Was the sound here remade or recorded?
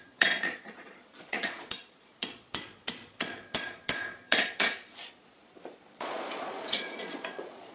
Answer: remade